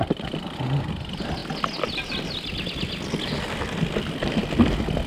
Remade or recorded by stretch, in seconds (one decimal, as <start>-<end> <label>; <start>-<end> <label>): 0.0-5.1 recorded